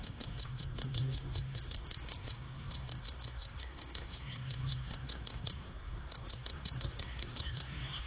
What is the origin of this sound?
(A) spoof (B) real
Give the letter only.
A